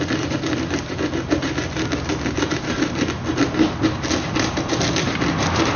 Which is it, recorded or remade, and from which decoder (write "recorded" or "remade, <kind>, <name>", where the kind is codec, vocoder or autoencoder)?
recorded